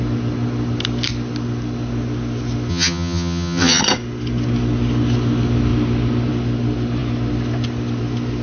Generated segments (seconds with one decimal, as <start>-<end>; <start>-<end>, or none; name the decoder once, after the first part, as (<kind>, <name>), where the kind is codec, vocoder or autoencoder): 2.7-3.8 (vocoder, HiFi-GAN)